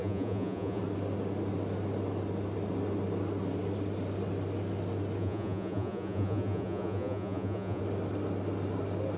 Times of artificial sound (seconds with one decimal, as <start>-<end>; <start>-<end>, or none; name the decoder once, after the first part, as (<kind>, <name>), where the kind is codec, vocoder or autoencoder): 0.0-0.8 (vocoder, Vocos); 5.2-7.8